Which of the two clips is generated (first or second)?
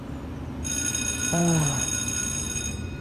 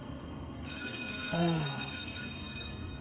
second